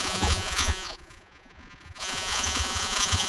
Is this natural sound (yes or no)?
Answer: no